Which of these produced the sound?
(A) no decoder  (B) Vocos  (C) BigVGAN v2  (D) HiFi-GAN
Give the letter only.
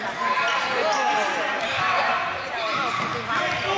A